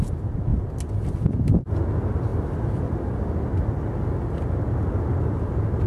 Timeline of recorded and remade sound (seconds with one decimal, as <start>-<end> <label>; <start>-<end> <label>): 0.0-5.9 recorded